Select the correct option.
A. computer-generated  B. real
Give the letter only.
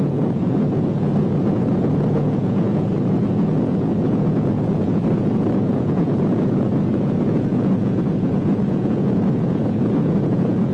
A